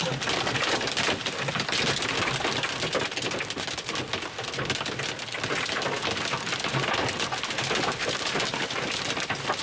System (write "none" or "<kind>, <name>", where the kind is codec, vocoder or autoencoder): none